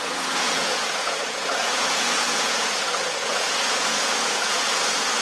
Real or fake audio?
fake